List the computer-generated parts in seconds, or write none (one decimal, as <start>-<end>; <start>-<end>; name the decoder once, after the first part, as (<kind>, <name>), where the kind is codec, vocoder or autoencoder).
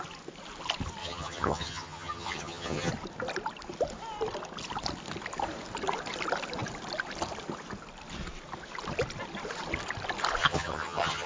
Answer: 1.0-2.9 (vocoder, HiFi-GAN); 10.4-11.3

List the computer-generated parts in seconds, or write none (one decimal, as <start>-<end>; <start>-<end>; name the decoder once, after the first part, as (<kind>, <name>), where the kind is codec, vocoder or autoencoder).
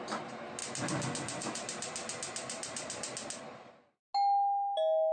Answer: none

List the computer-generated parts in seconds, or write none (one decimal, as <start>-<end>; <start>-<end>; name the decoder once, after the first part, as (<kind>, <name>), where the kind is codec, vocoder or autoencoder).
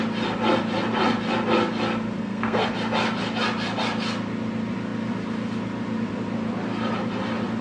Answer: 2.2-2.7 (codec, SNAC)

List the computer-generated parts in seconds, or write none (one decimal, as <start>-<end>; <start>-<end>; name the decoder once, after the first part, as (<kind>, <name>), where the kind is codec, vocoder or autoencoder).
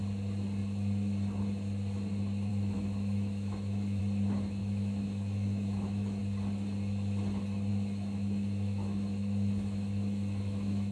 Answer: 2.5-4.0 (autoencoder, DAC-VAE); 4.6-6.2; 7.7-10.9